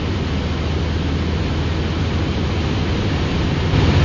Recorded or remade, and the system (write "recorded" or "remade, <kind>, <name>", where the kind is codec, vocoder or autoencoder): recorded